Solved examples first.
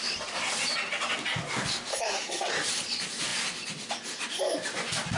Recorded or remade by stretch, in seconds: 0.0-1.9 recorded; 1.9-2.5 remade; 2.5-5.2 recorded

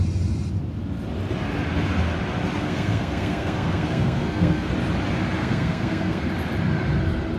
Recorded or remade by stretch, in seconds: 0.0-2.6 recorded; 2.6-4.7 remade; 4.7-5.4 recorded; 5.4-6.3 remade; 6.3-7.4 recorded

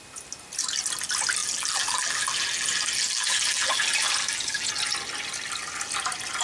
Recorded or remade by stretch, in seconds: 0.0-1.4 recorded; 1.4-4.7 remade; 4.7-6.4 recorded

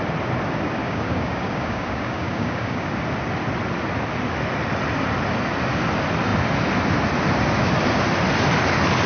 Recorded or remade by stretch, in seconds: 0.0-0.8 recorded; 0.8-2.9 remade; 2.9-9.1 recorded

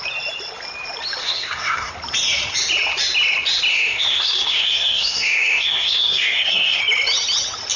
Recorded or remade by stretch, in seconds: 0.0-1.2 recorded; 1.2-1.9 remade; 1.9-3.7 recorded; 3.7-6.8 remade; 6.8-7.8 recorded

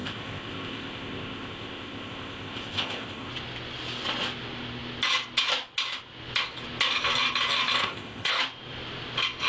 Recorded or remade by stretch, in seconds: 0.0-3.3 remade; 3.3-7.8 recorded; 7.8-8.4 remade; 8.4-9.5 recorded

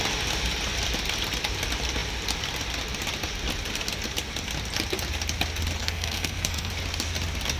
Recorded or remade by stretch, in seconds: 0.0-5.8 recorded; 5.8-6.7 remade; 6.7-7.6 recorded